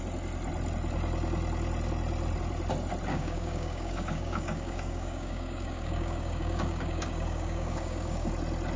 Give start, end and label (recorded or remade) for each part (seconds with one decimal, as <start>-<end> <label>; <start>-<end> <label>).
0.0-3.1 recorded; 3.1-8.3 remade; 8.3-8.8 recorded

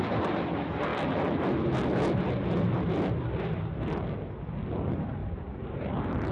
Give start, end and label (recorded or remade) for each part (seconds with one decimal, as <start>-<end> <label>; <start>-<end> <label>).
0.0-5.2 recorded; 5.2-6.3 remade